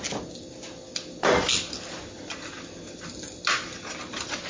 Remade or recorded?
recorded